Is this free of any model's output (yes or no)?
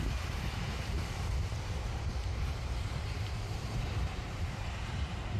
no